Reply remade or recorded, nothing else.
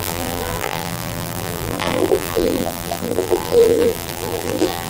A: remade